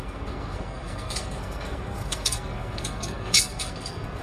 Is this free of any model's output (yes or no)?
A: no